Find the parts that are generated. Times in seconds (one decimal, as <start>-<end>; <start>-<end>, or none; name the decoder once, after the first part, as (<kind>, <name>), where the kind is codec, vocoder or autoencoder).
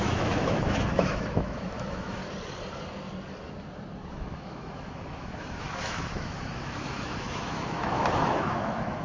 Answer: 0.0-2.2 (autoencoder, DAC-VAE); 4.1-9.0